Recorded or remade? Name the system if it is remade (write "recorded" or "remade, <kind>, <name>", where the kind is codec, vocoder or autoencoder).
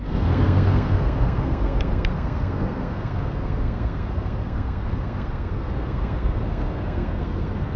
remade, codec, SNAC